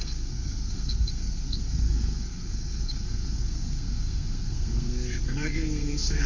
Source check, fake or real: fake